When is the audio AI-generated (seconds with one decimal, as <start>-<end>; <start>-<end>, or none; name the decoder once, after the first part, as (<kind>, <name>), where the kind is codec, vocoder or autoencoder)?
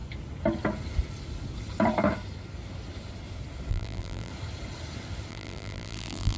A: 3.7-4.3 (vocoder, BigVGAN v2); 5.3-6.4